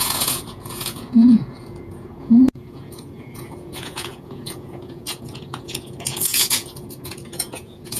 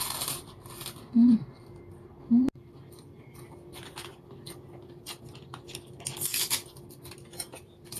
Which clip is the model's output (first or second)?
first